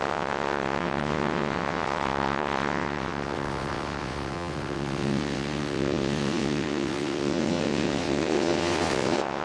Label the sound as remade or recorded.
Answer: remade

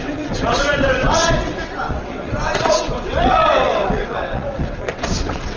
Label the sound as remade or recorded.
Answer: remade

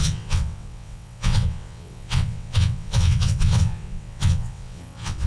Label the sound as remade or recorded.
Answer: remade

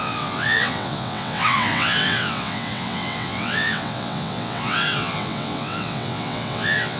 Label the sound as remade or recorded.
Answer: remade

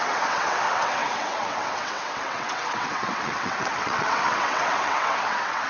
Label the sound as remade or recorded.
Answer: remade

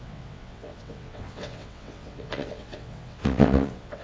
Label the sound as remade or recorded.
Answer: remade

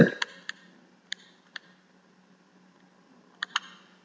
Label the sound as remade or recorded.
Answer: recorded